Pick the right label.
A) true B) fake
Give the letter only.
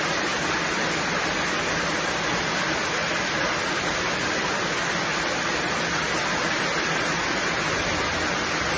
A